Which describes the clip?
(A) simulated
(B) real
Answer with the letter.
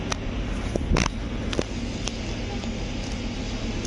B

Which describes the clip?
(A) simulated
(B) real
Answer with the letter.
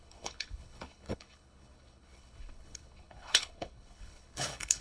A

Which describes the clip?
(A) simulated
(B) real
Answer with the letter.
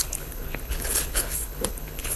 A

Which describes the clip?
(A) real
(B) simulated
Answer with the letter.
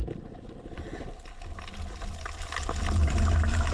A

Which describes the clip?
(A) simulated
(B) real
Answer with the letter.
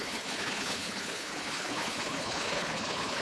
A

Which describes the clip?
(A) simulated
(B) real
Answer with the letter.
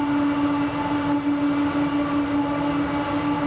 B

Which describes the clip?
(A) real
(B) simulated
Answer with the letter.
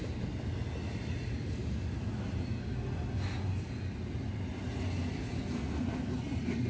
A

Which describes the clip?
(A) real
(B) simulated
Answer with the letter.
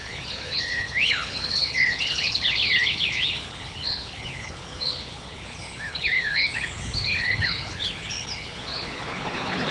B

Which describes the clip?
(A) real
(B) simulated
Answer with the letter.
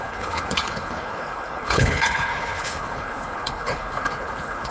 B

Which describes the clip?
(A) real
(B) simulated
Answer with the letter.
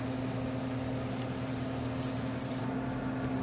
A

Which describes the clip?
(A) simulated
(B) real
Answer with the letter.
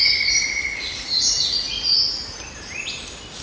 B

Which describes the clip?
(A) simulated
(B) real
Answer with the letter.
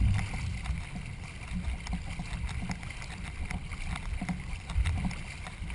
B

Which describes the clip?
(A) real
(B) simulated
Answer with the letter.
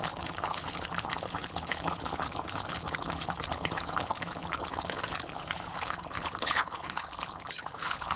B